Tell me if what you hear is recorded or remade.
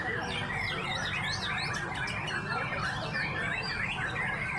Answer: recorded